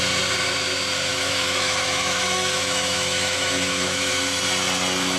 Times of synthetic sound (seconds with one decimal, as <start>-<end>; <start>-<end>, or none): 1.1-4.2